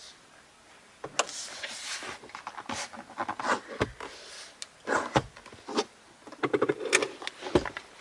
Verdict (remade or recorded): recorded